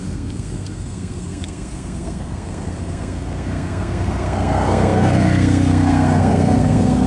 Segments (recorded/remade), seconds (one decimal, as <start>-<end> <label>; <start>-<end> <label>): 0.0-7.1 remade